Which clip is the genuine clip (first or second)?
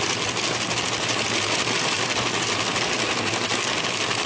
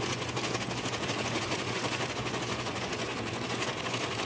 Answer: first